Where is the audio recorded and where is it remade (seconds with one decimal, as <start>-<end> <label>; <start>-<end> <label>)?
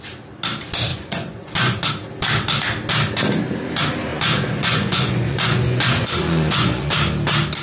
0.0-0.9 recorded; 0.9-1.9 remade; 1.9-4.1 recorded; 4.1-6.9 remade; 6.9-7.6 recorded